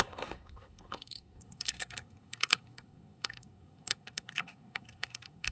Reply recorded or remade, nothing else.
remade